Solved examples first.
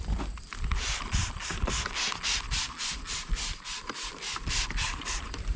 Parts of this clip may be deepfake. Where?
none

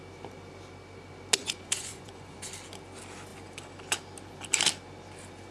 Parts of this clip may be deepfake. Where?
1.4-2.5

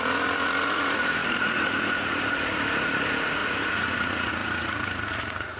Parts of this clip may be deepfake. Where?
0.0-5.6

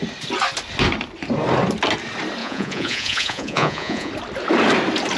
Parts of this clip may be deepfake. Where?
2.4-4.1

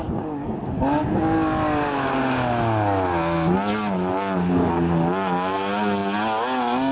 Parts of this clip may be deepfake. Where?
none

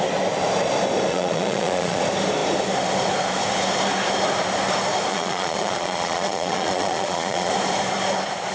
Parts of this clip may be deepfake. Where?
1.1-2.0; 5.1-7.5

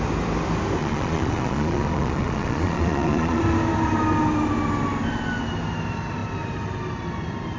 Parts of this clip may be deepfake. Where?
0.8-3.4